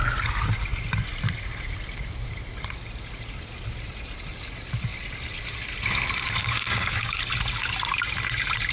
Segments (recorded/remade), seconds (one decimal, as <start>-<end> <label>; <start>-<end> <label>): 0.0-6.4 recorded; 6.4-7.2 remade; 7.2-8.7 recorded